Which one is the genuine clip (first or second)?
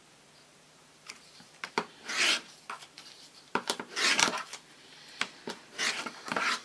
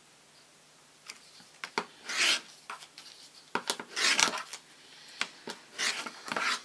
second